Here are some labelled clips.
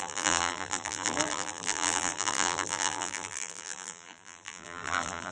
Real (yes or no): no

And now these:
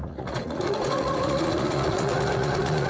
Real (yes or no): no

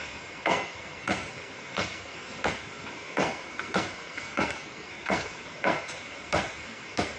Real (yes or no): no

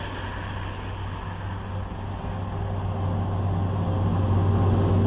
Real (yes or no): yes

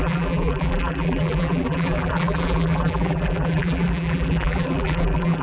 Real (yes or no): no